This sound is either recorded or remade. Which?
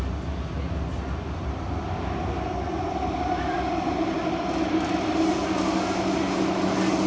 recorded